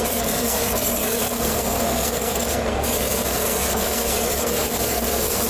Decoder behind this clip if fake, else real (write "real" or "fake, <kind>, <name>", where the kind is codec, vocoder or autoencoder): fake, codec, SNAC